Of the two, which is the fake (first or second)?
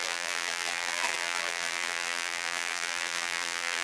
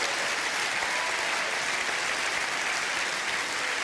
first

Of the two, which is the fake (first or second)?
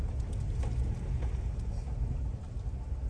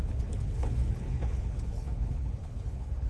second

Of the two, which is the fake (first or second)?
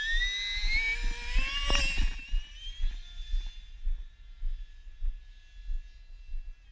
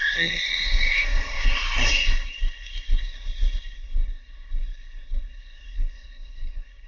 second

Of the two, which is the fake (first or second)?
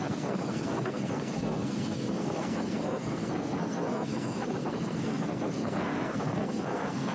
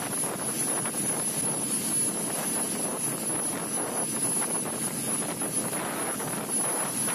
first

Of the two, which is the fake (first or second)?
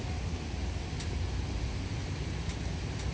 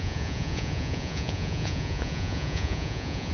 second